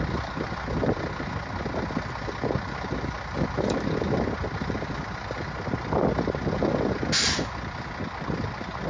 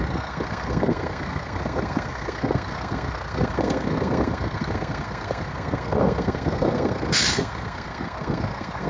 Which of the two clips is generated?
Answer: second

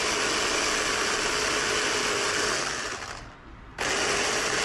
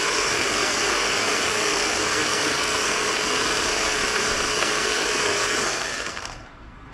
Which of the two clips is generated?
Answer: second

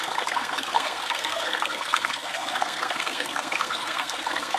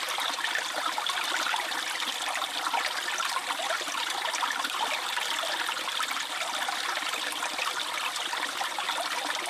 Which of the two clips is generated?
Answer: first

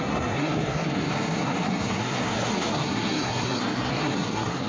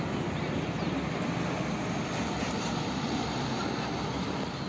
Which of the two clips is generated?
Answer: first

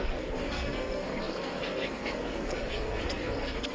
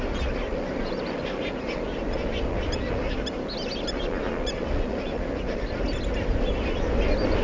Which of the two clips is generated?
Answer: first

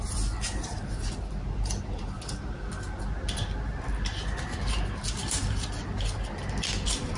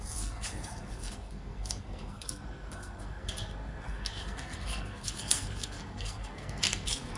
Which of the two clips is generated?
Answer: second